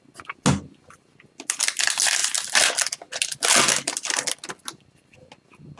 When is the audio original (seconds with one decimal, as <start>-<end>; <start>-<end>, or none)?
0.0-5.8